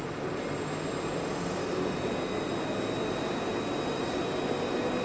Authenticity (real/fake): real